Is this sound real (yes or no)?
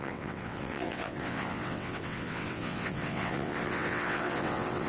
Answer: no